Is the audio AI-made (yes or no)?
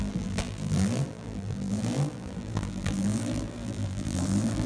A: yes